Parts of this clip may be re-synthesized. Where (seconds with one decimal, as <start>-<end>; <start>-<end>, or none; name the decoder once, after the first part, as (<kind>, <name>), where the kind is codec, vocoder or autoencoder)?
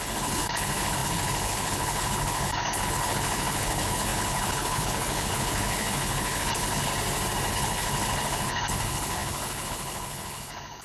0.0-6.9 (codec, HILCodec); 7.5-10.8